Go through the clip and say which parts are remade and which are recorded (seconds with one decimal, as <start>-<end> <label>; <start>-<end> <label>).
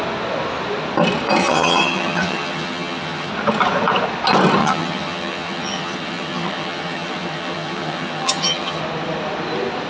0.0-1.4 recorded; 1.4-3.3 remade; 3.3-4.6 recorded; 4.6-8.8 remade; 8.8-9.9 recorded